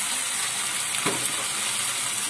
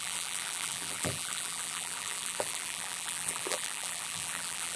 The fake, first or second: second